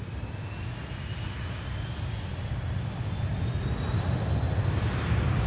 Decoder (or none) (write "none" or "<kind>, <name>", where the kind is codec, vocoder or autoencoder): none